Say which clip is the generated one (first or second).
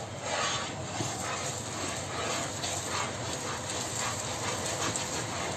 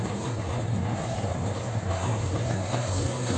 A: second